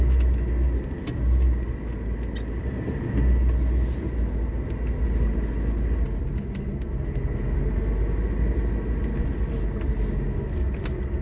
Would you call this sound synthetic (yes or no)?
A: no